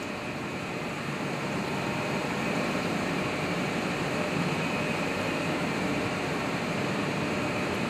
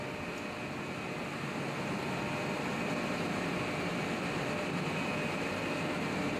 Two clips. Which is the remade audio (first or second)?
first